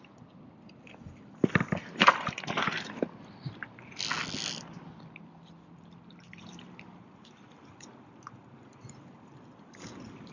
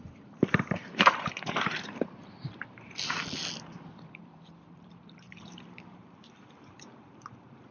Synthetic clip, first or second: second